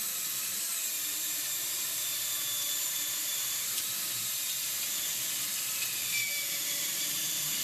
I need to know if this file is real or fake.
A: fake